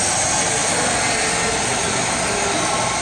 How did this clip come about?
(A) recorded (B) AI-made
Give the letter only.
A